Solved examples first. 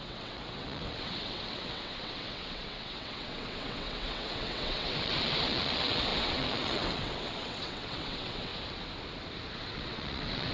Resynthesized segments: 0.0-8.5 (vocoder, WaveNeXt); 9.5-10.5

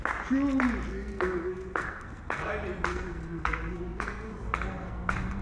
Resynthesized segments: 0.9-2.5 (codec, SNAC); 2.9-5.4

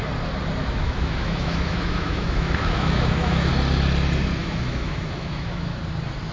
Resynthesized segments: 0.6-3.5 (autoencoder, DAC-VAE); 4.4-5.8